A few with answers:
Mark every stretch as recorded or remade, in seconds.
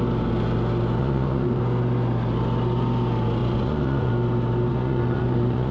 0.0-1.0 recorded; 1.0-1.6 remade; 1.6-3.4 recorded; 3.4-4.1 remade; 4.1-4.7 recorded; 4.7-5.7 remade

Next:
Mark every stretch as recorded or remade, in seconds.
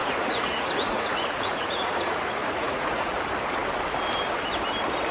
0.0-3.1 remade; 3.1-5.1 recorded